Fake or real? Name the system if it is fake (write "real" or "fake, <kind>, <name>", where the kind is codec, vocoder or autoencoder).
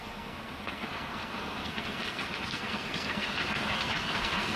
fake, codec, SNAC